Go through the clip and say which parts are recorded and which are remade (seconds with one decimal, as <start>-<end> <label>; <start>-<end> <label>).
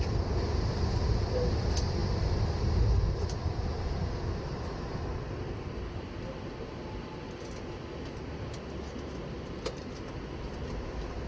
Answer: 0.0-11.3 recorded